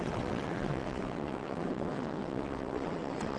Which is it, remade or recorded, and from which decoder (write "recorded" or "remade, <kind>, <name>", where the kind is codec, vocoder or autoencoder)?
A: remade, vocoder, WaveNeXt